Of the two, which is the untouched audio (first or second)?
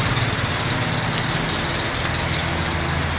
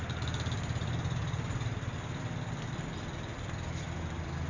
first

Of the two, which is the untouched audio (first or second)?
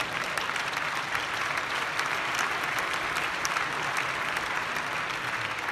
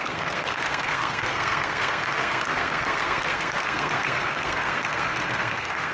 first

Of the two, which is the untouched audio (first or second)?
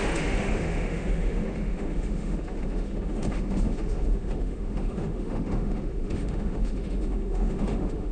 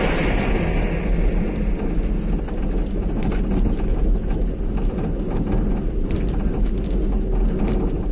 second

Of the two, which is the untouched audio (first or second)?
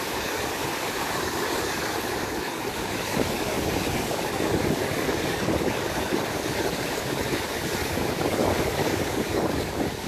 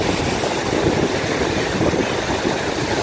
second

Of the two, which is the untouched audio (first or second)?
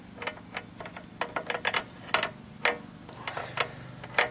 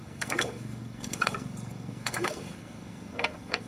first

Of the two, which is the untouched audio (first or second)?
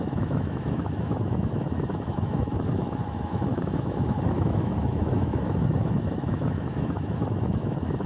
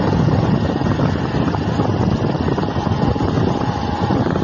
second